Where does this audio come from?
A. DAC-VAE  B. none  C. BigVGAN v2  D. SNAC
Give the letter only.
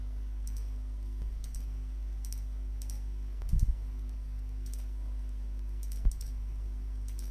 D